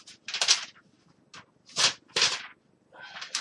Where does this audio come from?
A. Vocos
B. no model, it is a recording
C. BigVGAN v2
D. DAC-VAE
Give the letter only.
B